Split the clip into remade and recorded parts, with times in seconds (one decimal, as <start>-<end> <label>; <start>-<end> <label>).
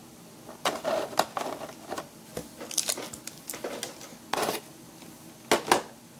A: 0.0-6.2 recorded